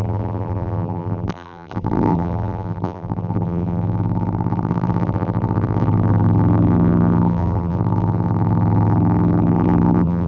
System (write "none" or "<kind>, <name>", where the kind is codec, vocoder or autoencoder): vocoder, BigVGAN v2